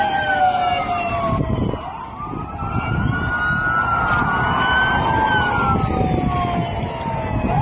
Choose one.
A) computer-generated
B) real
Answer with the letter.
B